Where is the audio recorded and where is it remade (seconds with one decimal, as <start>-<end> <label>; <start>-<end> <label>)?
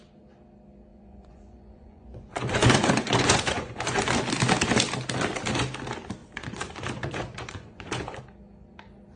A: 0.0-0.9 recorded; 0.9-4.1 remade; 4.1-6.2 recorded; 6.2-8.2 remade; 8.2-9.2 recorded